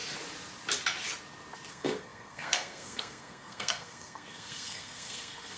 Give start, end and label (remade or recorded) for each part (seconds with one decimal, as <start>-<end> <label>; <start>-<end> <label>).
0.0-1.7 recorded; 1.7-5.6 remade